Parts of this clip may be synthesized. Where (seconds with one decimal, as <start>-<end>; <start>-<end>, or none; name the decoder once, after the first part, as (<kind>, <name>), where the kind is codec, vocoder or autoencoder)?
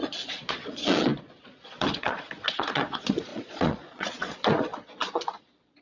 0.0-5.8 (vocoder, Vocos)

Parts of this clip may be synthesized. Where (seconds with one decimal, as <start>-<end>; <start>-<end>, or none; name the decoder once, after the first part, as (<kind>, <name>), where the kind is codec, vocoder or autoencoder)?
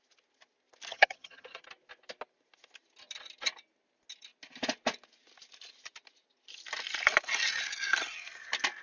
0.9-1.6 (vocoder, HiFi-GAN)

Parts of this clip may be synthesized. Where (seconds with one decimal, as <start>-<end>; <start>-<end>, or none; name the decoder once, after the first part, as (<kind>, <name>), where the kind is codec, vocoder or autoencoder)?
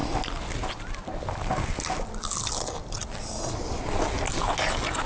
none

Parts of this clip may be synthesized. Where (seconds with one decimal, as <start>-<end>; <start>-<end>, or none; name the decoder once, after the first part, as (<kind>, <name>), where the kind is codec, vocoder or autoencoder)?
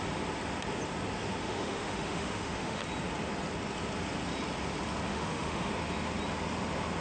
1.4-2.8 (autoencoder, DAC-VAE); 5.1-5.7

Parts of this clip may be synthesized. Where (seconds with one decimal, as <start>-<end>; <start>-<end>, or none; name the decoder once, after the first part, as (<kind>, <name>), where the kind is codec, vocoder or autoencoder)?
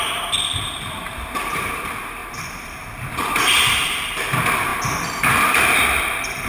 0.0-6.5 (vocoder, BigVGAN v2)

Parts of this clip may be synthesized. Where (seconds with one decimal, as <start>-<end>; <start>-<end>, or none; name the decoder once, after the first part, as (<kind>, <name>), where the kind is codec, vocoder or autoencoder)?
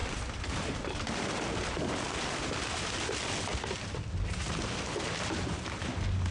none